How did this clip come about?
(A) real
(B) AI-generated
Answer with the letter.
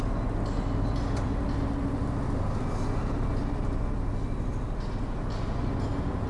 A